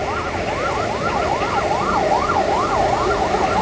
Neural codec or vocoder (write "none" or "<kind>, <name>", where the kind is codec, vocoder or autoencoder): none